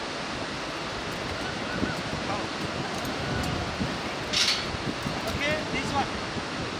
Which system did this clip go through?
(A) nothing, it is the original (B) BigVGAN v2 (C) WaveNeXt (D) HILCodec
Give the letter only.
A